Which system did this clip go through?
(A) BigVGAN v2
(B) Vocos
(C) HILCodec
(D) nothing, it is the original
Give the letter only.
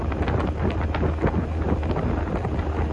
D